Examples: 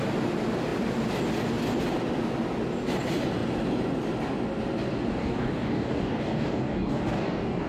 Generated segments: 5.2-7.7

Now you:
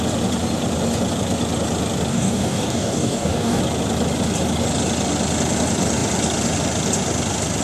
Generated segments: 2.1-3.6